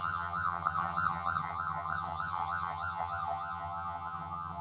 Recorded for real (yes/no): no